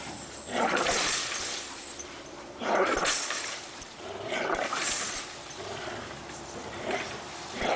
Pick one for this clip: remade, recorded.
remade